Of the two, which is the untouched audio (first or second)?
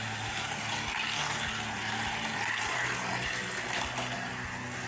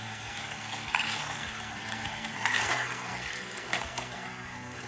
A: first